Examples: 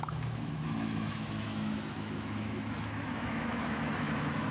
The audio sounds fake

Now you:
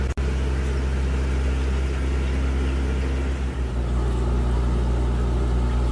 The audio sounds real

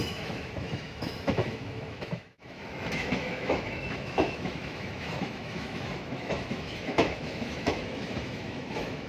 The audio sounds fake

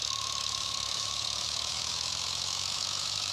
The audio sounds fake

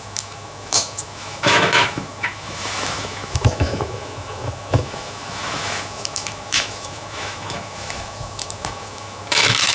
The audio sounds fake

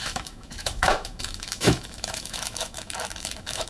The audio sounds fake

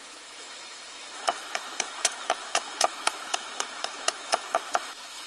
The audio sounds fake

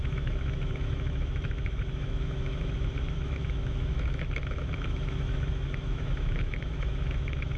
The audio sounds fake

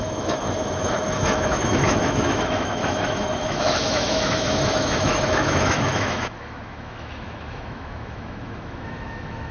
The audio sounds fake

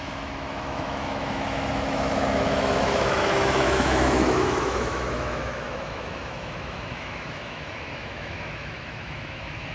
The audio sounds fake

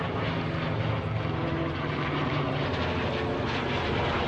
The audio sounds real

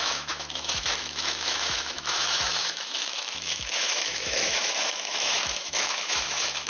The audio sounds fake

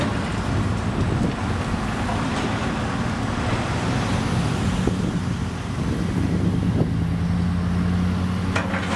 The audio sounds real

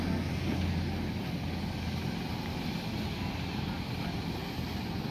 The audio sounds real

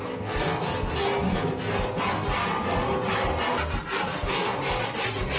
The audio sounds real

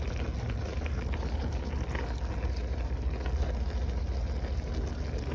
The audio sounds real